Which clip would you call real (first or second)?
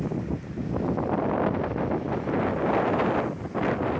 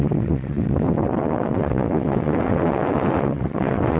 first